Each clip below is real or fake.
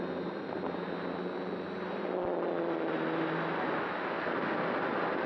real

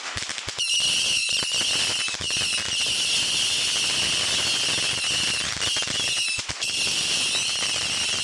real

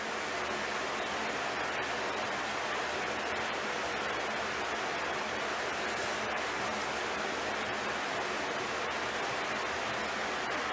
real